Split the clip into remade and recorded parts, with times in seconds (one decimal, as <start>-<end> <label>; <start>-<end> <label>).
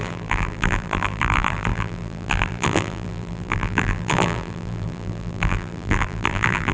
0.0-6.7 remade